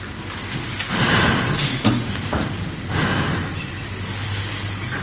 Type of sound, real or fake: real